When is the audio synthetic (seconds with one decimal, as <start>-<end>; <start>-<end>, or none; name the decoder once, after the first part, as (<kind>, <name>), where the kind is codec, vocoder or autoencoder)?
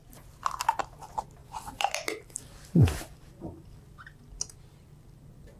1.4-3.8 (vocoder, BigVGAN v2)